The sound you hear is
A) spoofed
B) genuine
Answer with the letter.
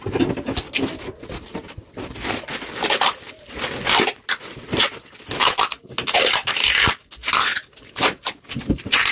B